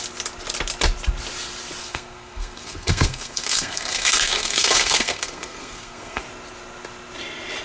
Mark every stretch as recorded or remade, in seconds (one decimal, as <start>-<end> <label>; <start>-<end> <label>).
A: 0.0-1.8 recorded; 1.8-6.2 remade; 6.2-7.6 recorded